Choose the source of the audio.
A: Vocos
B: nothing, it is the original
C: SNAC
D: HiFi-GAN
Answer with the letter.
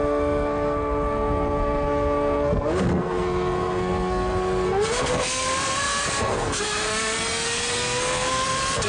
C